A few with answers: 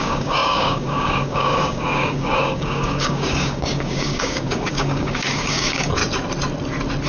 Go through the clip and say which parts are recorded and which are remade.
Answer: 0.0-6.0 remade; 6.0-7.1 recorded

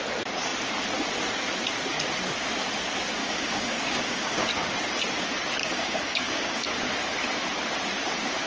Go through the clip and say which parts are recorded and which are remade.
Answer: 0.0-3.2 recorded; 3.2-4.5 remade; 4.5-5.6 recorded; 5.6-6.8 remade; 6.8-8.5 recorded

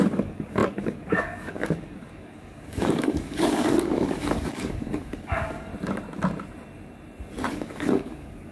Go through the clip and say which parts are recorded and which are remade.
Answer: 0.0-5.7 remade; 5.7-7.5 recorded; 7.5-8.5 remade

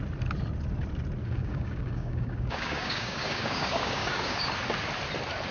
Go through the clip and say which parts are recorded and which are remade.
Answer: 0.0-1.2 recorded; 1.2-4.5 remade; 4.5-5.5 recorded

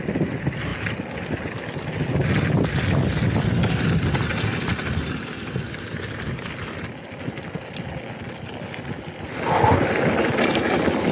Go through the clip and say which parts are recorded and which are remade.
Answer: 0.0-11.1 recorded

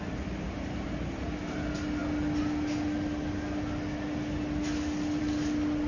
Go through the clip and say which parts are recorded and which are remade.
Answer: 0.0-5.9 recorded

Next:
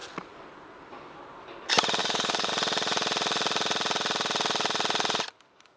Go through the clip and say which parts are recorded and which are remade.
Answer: 0.0-2.0 recorded; 2.0-2.5 remade; 2.5-5.3 recorded; 5.3-5.8 remade

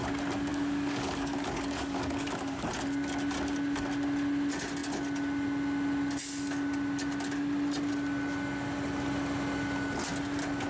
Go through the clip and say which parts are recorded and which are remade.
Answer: 0.0-0.5 recorded; 0.5-2.7 remade; 2.7-10.7 recorded